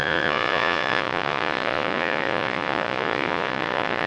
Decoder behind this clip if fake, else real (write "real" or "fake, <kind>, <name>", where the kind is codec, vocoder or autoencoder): fake, vocoder, Vocos